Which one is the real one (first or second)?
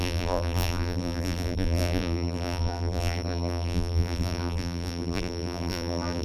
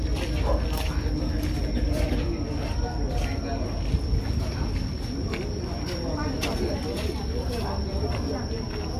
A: second